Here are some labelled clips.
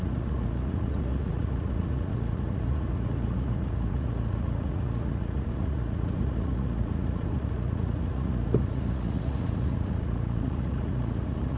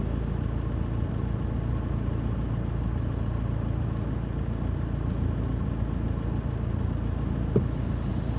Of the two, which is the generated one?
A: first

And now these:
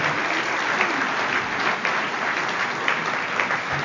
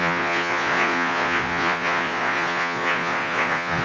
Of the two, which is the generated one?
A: second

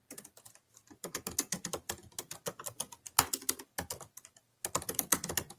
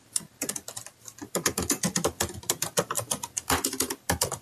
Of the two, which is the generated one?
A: second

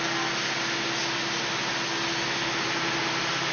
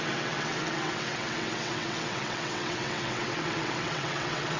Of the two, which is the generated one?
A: second